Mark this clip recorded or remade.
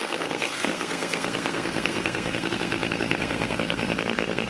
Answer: remade